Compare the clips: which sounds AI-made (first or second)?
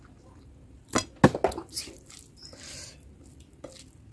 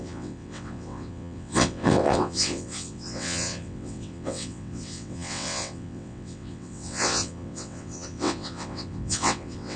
second